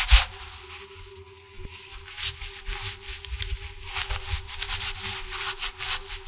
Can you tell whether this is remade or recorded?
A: recorded